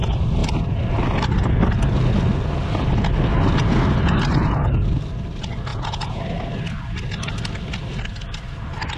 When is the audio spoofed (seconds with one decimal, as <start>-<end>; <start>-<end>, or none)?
5.7-6.2